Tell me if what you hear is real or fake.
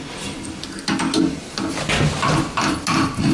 real